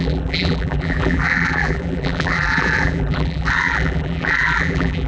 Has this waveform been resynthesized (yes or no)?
yes